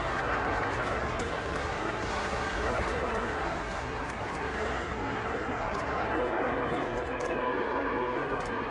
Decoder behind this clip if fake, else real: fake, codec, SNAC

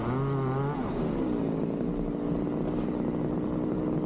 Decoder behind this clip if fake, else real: real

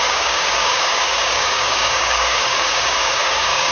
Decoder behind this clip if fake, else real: fake, codec, DAC